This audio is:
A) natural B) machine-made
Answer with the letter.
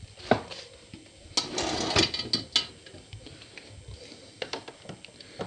A